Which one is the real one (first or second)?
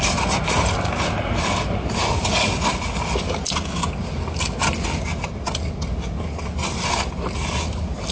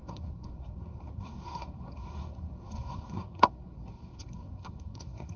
first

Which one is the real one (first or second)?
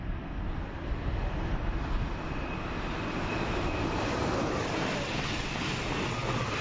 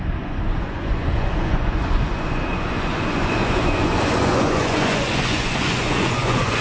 first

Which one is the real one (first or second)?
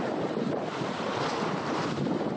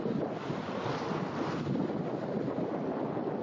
second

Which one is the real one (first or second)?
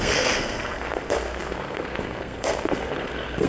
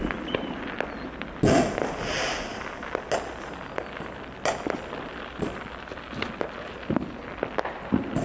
second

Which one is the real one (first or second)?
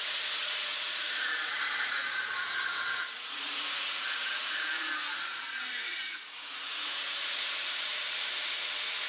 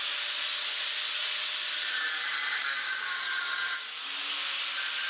second